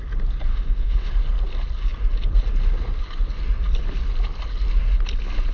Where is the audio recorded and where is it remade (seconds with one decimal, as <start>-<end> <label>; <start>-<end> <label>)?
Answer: 0.0-0.5 recorded; 0.5-1.1 remade; 1.1-5.5 recorded